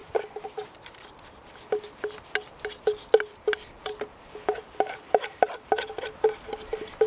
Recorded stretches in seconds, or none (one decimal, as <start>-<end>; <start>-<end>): 0.0-7.1